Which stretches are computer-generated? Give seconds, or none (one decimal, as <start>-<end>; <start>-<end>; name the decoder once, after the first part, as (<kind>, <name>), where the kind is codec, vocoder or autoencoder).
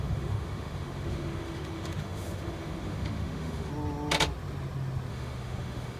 0.0-3.7 (autoencoder, DAC-VAE); 5.1-6.0